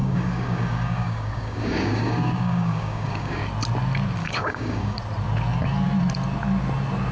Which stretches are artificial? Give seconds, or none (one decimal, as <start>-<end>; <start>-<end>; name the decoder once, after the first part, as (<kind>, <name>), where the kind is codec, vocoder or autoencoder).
0.0-3.4 (codec, DAC); 4.2-5.0